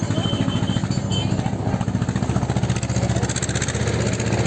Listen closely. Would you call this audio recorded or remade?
recorded